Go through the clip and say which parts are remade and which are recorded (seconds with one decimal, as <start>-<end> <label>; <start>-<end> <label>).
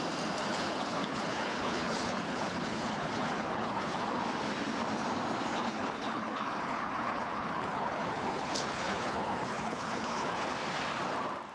0.0-0.4 recorded; 0.4-4.2 remade; 4.2-5.5 recorded; 5.5-10.5 remade; 10.5-11.5 recorded